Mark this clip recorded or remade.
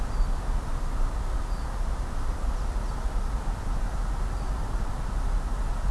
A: recorded